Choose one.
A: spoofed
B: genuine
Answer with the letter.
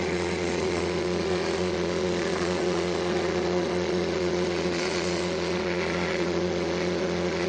A